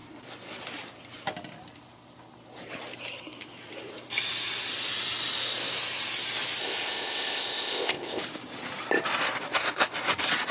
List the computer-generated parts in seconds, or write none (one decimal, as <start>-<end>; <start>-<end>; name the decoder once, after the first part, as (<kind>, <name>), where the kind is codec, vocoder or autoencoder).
6.6-8.2 (codec, ZipCodec)